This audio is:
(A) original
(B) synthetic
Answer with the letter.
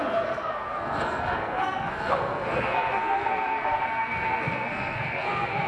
B